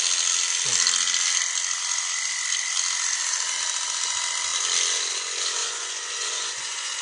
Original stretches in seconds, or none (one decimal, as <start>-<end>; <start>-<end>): 0.0-5.6